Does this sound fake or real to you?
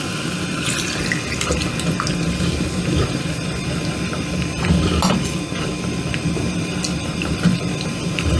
real